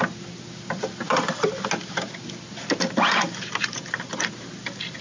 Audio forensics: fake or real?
real